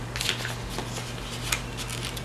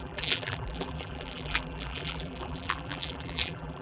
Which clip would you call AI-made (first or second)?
second